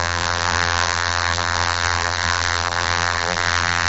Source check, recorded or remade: remade